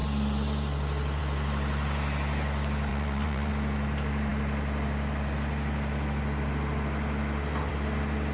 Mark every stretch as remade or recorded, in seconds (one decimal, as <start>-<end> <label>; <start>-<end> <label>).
0.0-2.9 recorded; 2.9-3.5 remade; 3.5-8.3 recorded